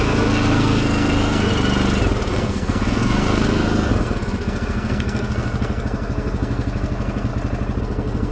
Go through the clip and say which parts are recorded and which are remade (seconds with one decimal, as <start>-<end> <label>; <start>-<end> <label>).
0.0-1.5 remade; 1.5-2.3 recorded; 2.3-7.3 remade; 7.3-7.8 recorded; 7.8-8.3 remade